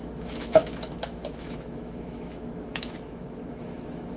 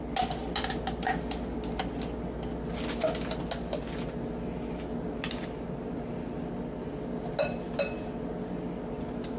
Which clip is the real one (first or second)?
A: second